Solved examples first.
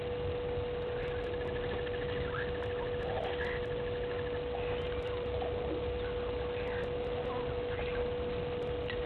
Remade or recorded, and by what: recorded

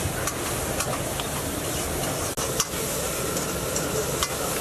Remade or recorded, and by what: recorded